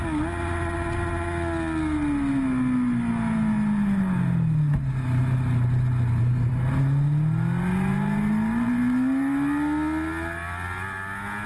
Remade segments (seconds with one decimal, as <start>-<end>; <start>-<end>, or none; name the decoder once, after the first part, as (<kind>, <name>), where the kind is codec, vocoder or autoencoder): none